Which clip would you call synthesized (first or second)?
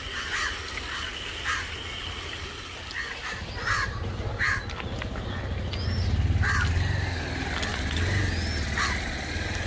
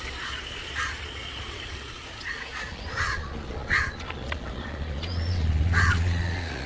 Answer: second